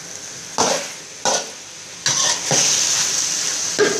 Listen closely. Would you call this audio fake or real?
real